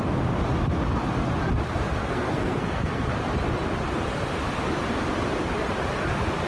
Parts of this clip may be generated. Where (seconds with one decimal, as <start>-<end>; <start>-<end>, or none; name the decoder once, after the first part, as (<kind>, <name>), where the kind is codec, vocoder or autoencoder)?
2.0-3.1 (codec, SNAC)